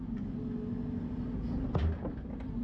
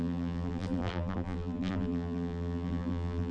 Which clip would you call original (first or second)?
first